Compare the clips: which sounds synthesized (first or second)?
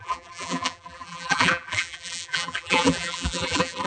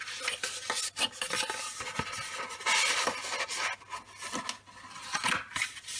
first